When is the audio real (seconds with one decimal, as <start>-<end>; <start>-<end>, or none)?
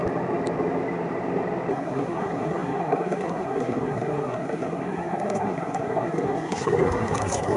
0.0-1.7